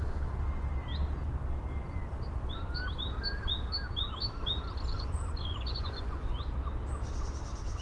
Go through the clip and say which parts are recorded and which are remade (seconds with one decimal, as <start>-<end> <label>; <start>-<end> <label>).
0.0-4.9 recorded; 4.9-6.4 remade; 6.4-7.8 recorded